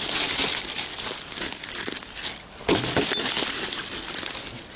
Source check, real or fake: real